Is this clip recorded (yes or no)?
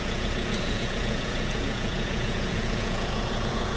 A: no